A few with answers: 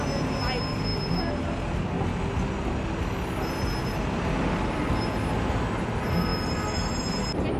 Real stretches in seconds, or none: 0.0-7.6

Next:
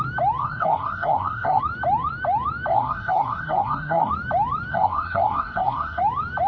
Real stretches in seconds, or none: 0.0-0.4; 1.6-2.7; 4.1-4.7; 6.0-6.5

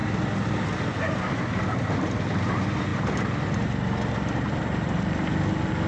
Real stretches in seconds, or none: 0.0-5.9

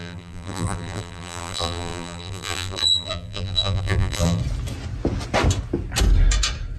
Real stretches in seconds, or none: 4.4-6.8

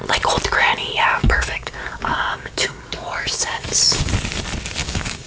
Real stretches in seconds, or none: 0.0-1.2; 4.1-4.8

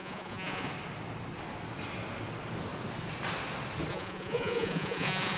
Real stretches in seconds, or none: 0.7-3.9

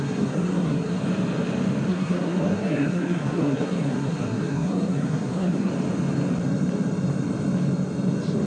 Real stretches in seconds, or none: 1.0-1.9; 5.7-8.5

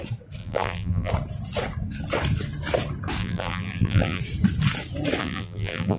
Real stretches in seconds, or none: 0.0-0.4; 1.1-3.2; 4.2-5.2